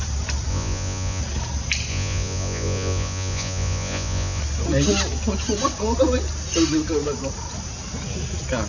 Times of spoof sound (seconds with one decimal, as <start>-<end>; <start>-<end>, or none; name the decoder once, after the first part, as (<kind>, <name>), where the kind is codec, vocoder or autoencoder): 0.5-1.2 (vocoder, Vocos); 1.9-4.4